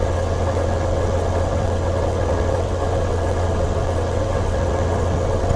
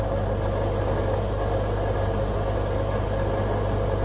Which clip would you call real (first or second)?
second